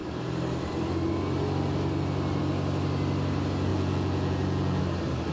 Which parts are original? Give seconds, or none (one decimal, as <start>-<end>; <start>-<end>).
0.0-3.7; 4.8-5.3